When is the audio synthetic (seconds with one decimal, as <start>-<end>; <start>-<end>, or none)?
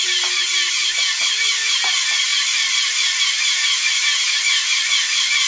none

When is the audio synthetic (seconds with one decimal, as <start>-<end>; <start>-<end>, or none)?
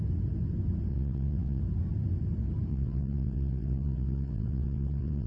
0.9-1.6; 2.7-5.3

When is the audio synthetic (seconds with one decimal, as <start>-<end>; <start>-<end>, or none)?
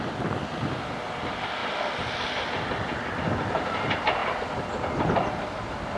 none